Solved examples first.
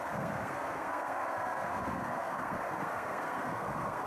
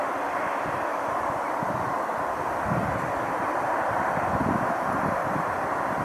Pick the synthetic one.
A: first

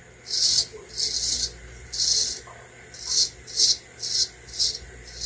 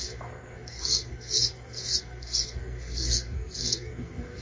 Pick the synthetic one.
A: second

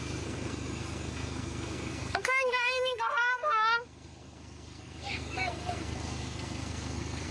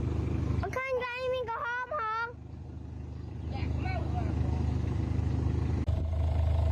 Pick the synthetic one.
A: first